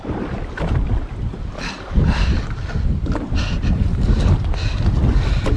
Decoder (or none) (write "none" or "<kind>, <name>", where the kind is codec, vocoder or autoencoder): none